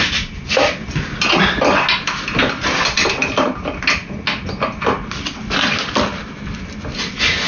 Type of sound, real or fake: real